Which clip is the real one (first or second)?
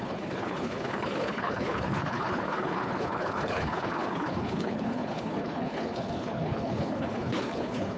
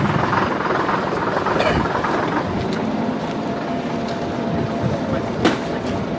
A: second